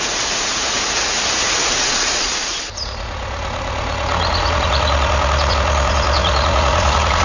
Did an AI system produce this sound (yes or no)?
yes